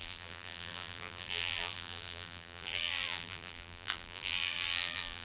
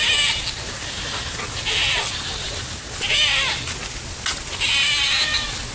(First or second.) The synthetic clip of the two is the first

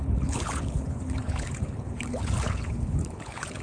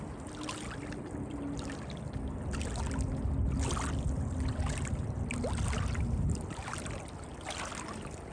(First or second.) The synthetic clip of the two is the first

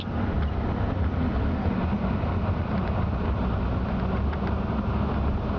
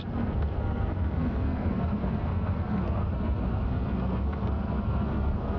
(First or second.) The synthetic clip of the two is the second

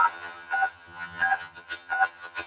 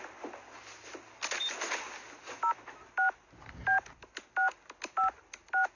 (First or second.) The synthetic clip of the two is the first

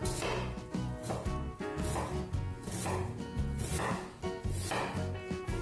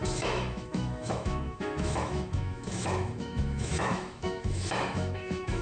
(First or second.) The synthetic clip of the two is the second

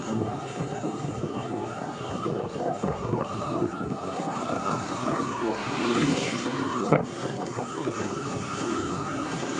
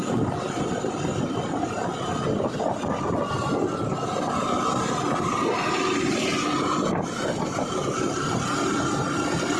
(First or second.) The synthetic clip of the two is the first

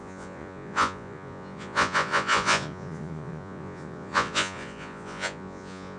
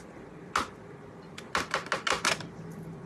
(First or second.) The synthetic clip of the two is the first